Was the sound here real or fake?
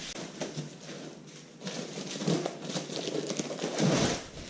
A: real